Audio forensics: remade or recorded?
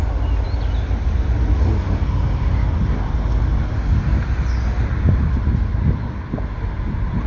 recorded